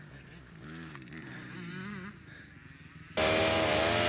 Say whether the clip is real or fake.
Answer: real